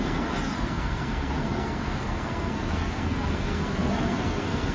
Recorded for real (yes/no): no